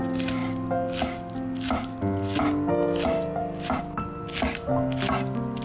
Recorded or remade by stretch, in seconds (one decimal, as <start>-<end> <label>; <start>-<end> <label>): 0.0-5.6 recorded